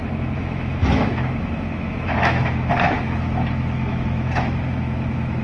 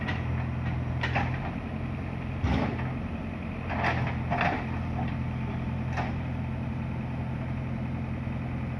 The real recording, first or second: second